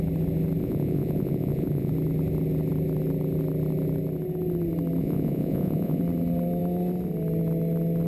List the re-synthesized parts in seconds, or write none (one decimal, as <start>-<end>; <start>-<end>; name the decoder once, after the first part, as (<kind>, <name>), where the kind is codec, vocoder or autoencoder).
0.6-1.9 (vocoder, Vocos); 5.0-6.0